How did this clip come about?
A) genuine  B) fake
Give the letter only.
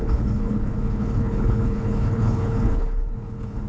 B